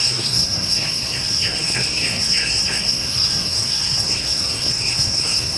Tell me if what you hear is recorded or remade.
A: remade